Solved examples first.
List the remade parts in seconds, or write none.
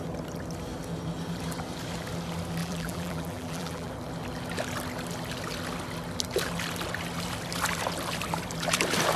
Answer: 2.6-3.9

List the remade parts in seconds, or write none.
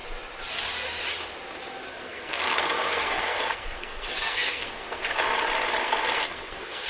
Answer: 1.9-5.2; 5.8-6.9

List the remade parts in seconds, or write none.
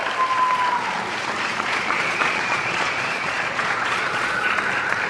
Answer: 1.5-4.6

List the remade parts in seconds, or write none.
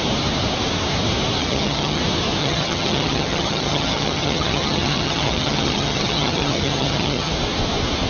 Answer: 1.4-2.0; 2.4-7.3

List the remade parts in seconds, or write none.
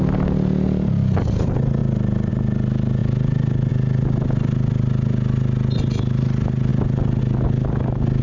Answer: none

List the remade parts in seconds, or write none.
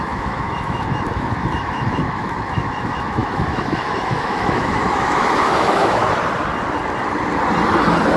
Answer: 0.0-6.0